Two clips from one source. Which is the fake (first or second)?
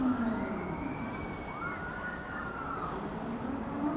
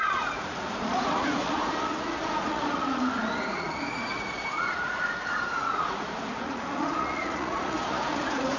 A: second